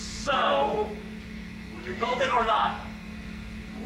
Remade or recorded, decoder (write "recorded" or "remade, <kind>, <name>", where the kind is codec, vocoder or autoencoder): remade, codec, SNAC